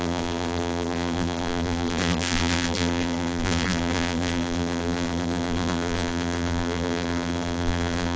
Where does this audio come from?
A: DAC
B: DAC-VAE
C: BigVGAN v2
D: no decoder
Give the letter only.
C